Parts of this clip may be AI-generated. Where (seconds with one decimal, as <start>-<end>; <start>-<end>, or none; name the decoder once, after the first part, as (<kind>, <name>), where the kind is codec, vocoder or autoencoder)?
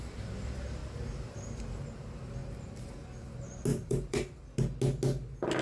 0.8-1.6 (vocoder, BigVGAN v2); 2.4-2.9; 3.7-4.4